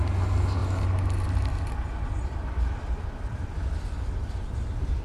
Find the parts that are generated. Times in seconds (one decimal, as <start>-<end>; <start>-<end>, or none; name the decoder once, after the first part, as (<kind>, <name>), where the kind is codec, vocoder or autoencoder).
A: none